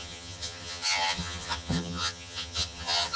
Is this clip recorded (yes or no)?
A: no